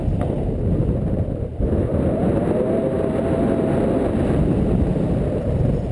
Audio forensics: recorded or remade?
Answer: recorded